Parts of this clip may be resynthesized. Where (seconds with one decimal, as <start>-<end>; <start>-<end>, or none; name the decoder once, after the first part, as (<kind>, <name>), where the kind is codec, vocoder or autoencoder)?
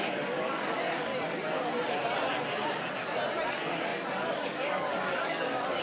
0.0-1.1 (codec, DAC); 3.5-5.8